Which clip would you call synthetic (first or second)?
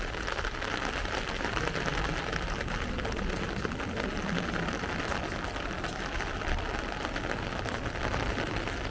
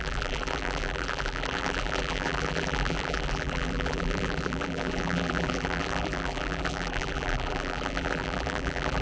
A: second